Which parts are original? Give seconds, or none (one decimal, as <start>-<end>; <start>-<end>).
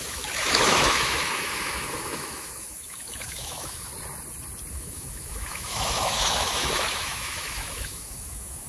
3.9-4.7